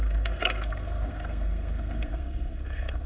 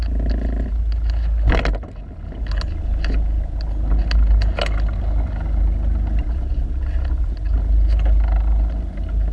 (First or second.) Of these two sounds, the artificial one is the first